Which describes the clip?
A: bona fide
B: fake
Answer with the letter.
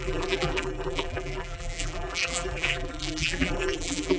B